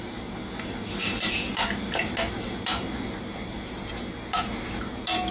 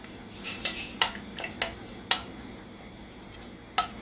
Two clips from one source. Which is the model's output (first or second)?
first